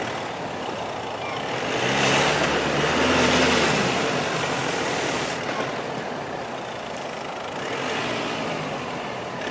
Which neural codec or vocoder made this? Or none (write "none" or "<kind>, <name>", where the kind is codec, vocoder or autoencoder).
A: none